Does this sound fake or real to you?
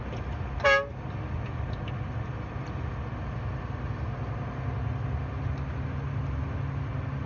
real